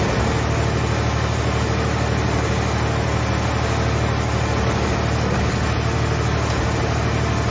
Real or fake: real